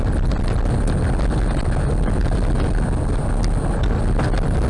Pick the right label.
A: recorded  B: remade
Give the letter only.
A